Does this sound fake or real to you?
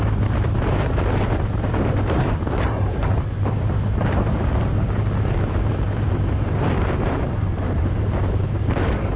fake